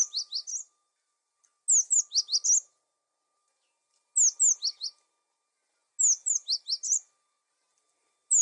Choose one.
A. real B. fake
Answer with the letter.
A